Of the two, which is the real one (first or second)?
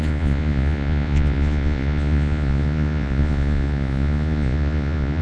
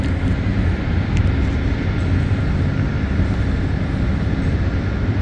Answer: second